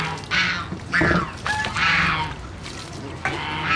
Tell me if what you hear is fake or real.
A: real